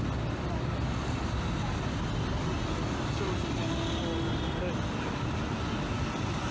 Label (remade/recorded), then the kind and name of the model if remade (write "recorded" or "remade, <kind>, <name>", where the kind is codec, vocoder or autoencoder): recorded